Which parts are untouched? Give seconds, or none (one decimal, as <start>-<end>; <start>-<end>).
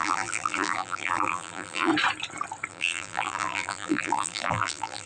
1.9-2.7